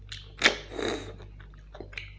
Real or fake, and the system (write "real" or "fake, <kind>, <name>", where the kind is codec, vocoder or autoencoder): real